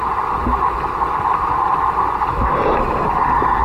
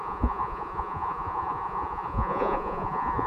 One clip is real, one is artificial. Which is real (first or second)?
first